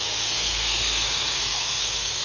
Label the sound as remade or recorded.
remade